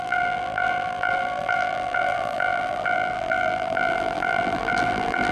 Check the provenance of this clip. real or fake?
fake